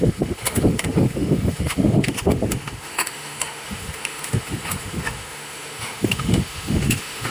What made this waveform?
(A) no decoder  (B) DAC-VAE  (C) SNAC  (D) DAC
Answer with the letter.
B